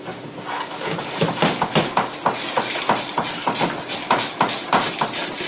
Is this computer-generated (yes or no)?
no